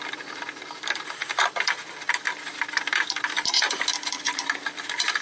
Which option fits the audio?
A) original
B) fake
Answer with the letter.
A